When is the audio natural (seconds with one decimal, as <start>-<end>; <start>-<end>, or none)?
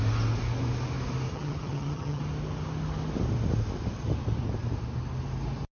0.0-1.3; 2.2-5.7